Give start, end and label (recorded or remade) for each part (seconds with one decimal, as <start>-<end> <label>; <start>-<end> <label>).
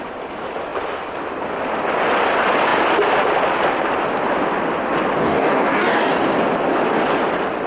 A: 0.0-5.2 recorded; 5.2-6.2 remade; 6.2-7.7 recorded